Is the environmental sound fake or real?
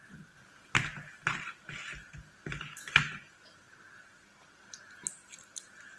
real